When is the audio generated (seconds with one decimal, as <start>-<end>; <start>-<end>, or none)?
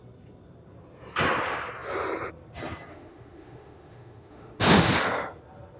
2.9-4.9